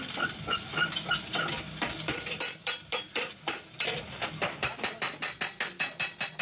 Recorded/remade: recorded